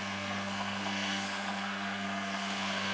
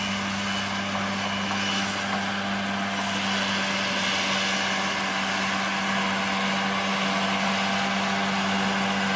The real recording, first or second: second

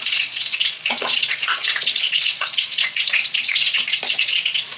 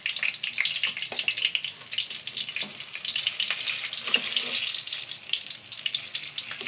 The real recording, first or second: second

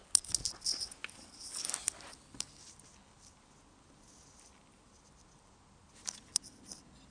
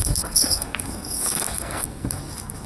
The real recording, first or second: first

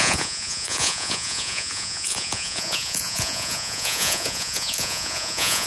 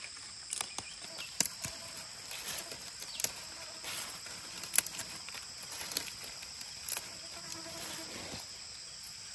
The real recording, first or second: second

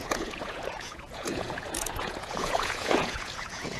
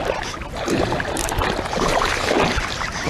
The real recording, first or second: second